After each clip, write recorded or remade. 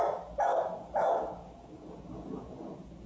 recorded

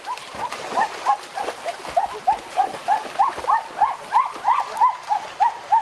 recorded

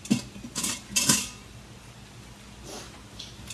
recorded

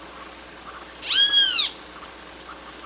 recorded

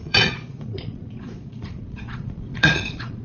remade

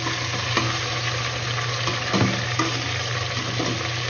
recorded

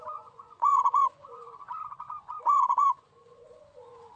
remade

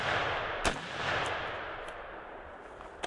recorded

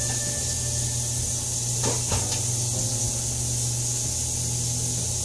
recorded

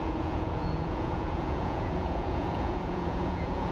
remade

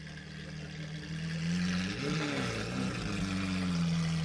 recorded